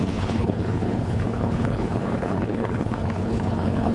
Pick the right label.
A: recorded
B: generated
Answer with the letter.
B